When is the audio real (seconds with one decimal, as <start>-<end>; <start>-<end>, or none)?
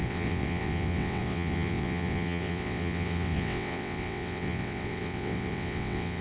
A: none